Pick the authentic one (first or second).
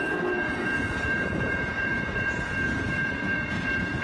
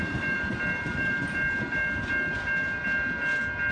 second